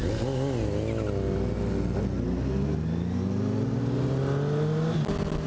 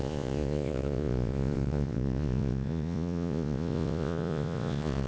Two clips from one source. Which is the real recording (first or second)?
first